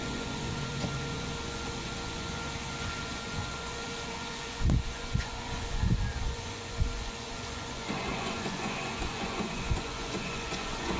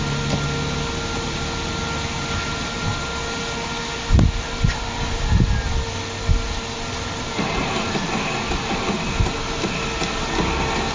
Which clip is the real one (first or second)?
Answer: second